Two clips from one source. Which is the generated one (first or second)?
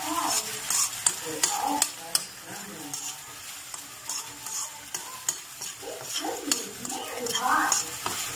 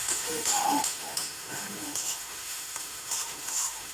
second